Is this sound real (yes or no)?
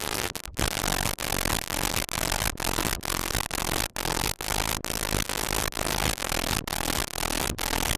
yes